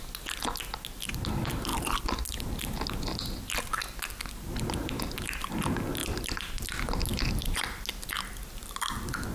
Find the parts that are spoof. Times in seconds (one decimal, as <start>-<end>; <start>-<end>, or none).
6.0-6.6; 7.1-7.8; 8.6-9.3